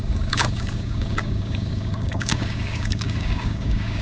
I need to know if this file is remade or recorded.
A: remade